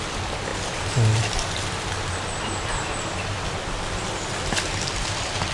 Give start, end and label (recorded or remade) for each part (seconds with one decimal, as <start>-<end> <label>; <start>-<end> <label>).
0.0-5.5 recorded

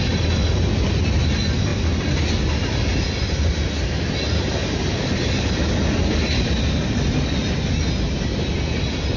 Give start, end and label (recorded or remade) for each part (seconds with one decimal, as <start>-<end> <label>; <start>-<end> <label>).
0.0-4.6 recorded; 4.6-5.4 remade; 5.4-9.2 recorded

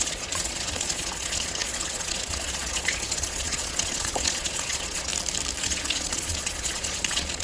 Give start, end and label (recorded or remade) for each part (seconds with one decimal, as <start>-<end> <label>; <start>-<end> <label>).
0.0-5.1 remade; 5.1-5.6 recorded; 5.6-7.4 remade

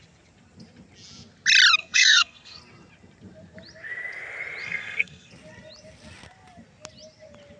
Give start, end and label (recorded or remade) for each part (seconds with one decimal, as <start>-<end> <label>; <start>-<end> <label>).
0.0-1.8 recorded; 1.8-2.6 remade; 2.6-4.6 recorded; 4.6-5.3 remade; 5.3-7.6 recorded

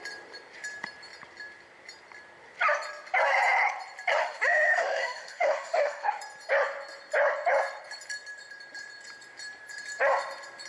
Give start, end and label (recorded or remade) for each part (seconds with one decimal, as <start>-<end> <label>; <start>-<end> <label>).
0.0-4.2 recorded; 4.2-6.2 remade; 6.2-10.7 recorded

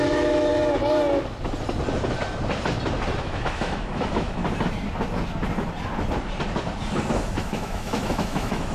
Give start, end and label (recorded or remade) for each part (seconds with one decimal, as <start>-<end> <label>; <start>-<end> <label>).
0.0-0.5 remade; 0.5-3.2 recorded; 3.2-4.4 remade; 4.4-7.1 recorded; 7.1-8.7 remade

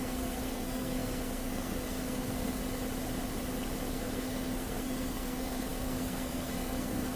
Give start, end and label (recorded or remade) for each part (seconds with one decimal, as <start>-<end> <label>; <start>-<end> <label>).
0.0-2.6 remade; 2.6-3.9 recorded; 3.9-7.2 remade